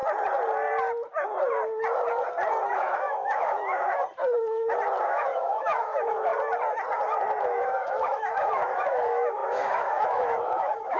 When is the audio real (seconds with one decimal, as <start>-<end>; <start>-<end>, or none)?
0.0-2.7; 4.0-5.0; 6.3-7.4